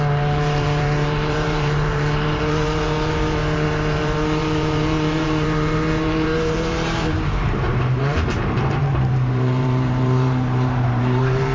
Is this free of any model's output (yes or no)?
no